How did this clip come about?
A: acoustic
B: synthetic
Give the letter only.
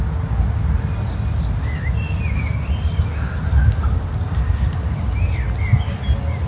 A